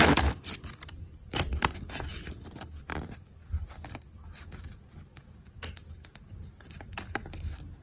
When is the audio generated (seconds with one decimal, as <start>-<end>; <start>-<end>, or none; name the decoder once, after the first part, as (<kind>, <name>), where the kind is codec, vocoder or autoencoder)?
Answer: none